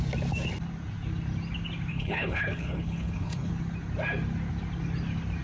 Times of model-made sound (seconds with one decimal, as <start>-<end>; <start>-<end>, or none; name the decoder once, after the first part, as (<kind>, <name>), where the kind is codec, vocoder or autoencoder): 1.9-3.5 (codec, HILCodec)